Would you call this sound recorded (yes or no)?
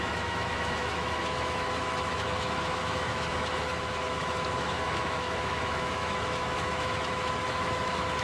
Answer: no